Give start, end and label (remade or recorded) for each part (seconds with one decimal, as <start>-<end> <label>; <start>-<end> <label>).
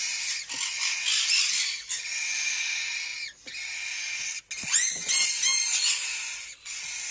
0.0-7.1 recorded